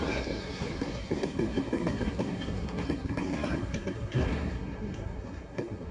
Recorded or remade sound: remade